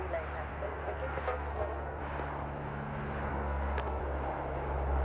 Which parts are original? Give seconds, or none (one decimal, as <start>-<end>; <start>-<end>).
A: 0.0-0.5; 2.0-3.3; 4.0-5.0